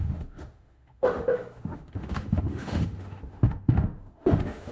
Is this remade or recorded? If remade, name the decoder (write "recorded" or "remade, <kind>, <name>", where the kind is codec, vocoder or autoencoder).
remade, autoencoder, DAC-VAE